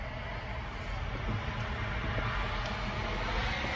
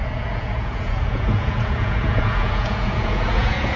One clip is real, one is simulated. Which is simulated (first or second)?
second